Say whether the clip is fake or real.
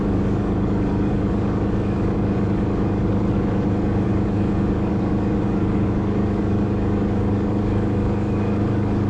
fake